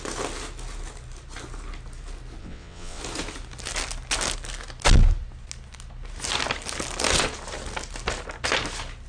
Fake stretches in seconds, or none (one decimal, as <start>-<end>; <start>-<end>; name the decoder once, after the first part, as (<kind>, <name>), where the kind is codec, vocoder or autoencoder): 2.4-3.0 (vocoder, WaveNeXt)